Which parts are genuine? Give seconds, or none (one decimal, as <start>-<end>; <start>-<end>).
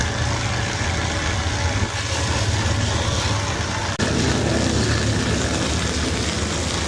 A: 0.0-6.9